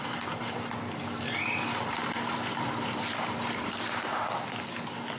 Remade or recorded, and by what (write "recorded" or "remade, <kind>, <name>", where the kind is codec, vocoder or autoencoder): recorded